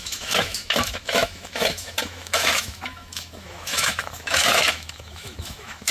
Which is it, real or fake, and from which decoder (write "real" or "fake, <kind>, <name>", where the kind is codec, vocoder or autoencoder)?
fake, autoencoder, DAC-VAE